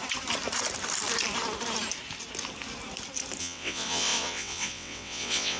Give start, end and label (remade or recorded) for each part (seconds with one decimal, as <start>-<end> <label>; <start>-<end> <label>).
0.0-3.4 recorded; 3.4-5.6 remade